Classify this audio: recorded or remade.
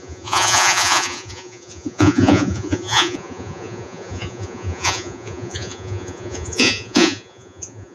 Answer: remade